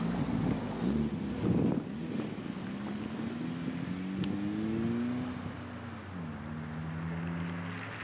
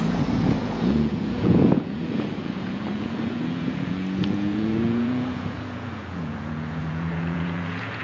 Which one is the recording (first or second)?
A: first